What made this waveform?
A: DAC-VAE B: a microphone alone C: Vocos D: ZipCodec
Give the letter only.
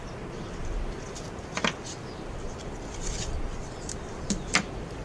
B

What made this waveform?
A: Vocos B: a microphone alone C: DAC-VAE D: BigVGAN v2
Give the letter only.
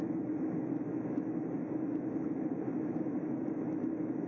C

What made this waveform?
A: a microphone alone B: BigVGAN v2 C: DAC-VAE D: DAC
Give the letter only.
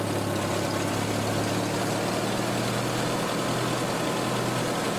A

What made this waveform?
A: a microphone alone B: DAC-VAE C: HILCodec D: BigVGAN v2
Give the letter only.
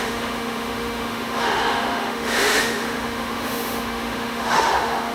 B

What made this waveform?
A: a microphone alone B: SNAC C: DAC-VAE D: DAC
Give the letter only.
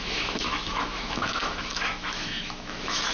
C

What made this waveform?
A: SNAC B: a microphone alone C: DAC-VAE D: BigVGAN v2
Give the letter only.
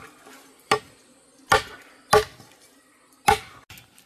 B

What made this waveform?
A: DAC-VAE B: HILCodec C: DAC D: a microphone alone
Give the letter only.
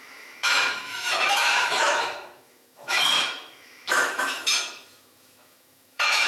A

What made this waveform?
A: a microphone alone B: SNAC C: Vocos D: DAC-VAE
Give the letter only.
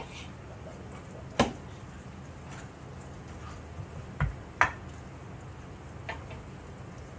A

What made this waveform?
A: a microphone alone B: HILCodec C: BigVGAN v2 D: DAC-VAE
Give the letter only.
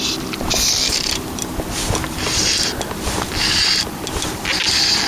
A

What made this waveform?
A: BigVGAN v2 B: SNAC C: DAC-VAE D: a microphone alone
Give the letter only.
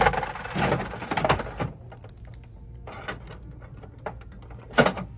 D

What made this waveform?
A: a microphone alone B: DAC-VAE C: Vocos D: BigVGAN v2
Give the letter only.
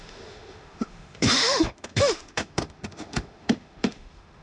B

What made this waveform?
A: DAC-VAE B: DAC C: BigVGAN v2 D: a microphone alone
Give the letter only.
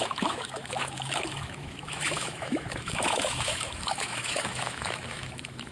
A